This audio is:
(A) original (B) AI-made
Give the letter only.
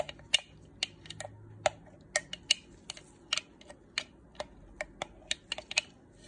A